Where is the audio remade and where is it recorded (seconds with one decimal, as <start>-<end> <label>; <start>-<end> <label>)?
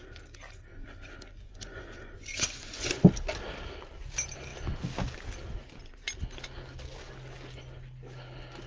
0.0-0.7 recorded; 0.7-3.0 remade; 3.0-8.7 recorded